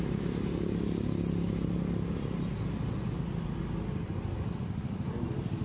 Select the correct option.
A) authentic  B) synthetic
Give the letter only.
A